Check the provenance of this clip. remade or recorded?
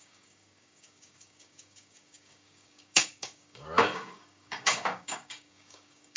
remade